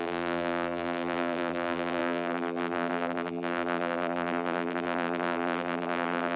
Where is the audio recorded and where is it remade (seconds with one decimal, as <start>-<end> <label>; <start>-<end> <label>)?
0.0-6.4 remade